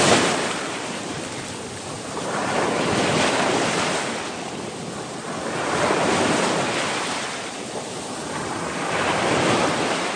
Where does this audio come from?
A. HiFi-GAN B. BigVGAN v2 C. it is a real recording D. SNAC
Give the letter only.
B